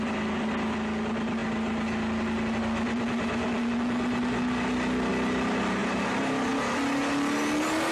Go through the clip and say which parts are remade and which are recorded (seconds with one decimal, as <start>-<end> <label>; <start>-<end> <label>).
0.0-5.8 recorded; 5.8-6.5 remade; 6.5-7.9 recorded